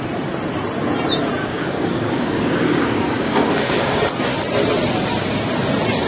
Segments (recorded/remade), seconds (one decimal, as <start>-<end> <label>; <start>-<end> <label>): 0.0-1.4 recorded; 1.4-4.0 remade; 4.0-6.1 recorded